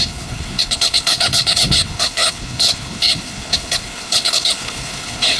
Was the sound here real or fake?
fake